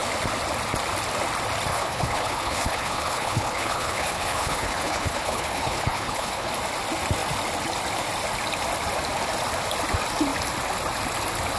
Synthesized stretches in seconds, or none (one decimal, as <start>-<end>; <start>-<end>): 1.7-6.5